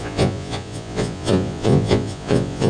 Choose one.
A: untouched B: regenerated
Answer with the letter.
B